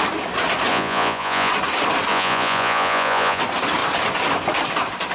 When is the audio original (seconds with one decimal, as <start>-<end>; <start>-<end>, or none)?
0.0-0.7; 1.5-2.1; 3.4-5.1